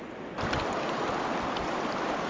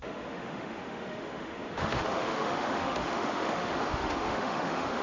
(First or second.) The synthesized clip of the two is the second